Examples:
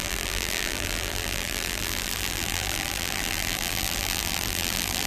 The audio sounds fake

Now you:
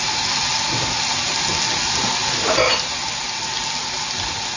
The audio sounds real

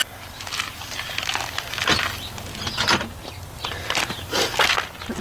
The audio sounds real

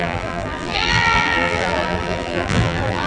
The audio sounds fake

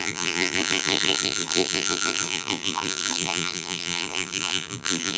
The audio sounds fake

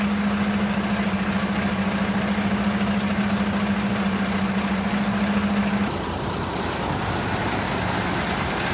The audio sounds real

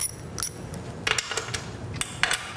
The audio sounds real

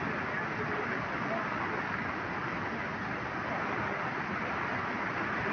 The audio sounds real